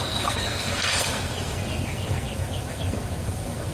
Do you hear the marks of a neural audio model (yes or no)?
yes